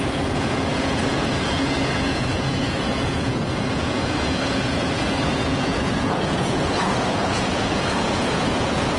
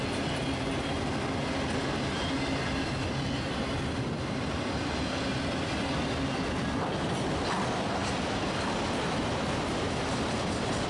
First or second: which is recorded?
second